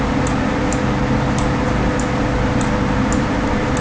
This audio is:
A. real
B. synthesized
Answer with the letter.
A